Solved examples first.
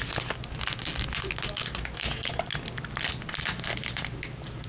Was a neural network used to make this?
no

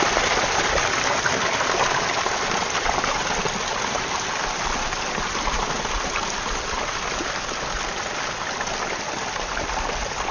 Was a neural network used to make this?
no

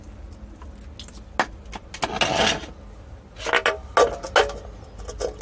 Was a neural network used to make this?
no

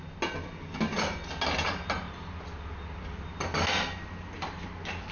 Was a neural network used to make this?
no